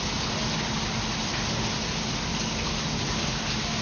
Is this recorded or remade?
recorded